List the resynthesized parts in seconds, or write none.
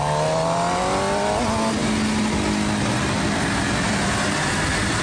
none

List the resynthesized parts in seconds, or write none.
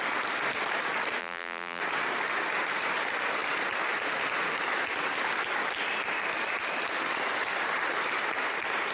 1.2-1.8 (vocoder, BigVGAN v2)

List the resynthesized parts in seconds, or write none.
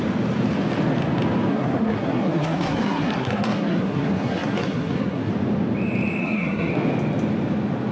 1.5-5.3 (codec, SNAC); 6.2-6.7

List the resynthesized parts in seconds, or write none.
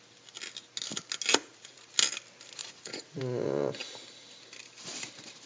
1.3-1.9 (vocoder, Vocos); 2.6-3.2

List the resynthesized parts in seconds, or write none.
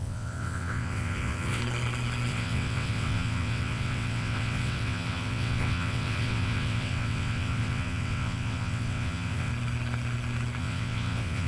0.0-1.6 (vocoder, WaveNeXt); 2.3-9.5; 10.6-11.5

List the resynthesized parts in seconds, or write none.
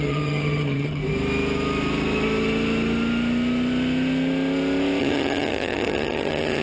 0.0-1.0 (vocoder, HiFi-GAN); 5.0-6.6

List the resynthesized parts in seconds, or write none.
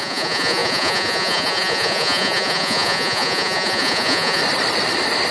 0.0-4.4 (vocoder, Vocos)